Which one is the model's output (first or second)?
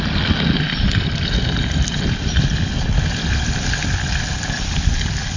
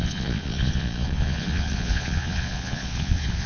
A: second